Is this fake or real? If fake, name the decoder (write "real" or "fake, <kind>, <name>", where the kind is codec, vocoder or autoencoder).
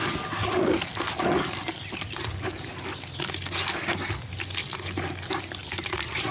real